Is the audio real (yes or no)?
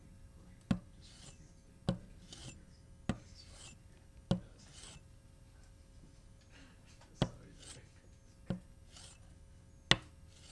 yes